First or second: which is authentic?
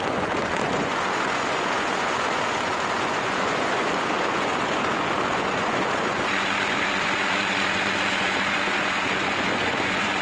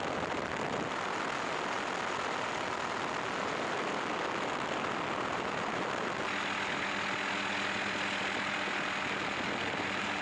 second